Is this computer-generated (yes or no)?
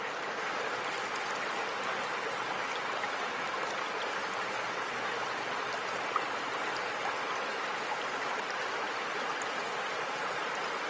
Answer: no